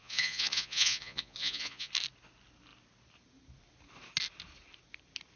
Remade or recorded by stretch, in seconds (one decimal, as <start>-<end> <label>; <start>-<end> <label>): 0.0-1.9 remade; 1.9-5.4 recorded